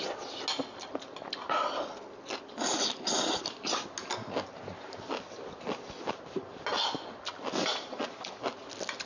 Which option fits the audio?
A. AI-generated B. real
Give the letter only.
B